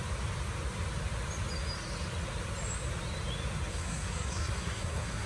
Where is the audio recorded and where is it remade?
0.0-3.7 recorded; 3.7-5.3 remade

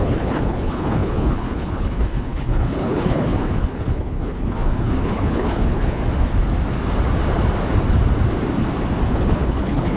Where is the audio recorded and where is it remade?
0.0-6.0 remade; 6.0-9.1 recorded; 9.1-10.0 remade

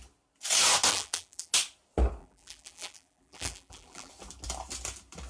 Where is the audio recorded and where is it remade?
0.0-0.9 recorded; 0.9-1.5 remade; 1.5-2.2 recorded; 2.2-4.1 remade; 4.1-5.3 recorded

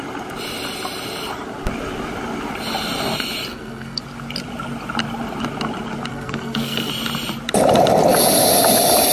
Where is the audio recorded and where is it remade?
0.0-3.5 recorded; 3.5-4.0 remade; 4.0-6.1 recorded; 6.1-6.9 remade; 6.9-9.1 recorded

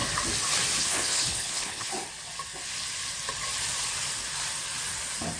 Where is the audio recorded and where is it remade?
0.0-0.8 recorded; 0.8-1.9 remade; 1.9-5.4 recorded

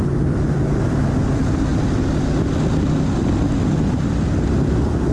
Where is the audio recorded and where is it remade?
0.0-5.1 recorded

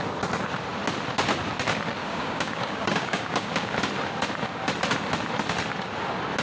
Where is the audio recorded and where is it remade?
0.0-2.0 recorded; 2.0-3.7 remade; 3.7-6.4 recorded

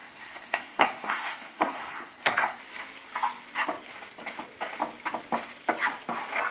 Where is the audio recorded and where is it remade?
0.0-2.6 remade; 2.6-6.5 recorded